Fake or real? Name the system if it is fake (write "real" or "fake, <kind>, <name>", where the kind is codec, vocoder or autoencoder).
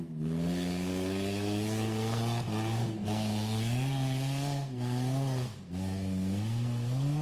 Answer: fake, codec, SNAC